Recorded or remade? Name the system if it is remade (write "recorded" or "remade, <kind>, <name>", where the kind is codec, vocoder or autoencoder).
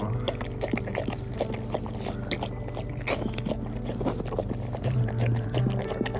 recorded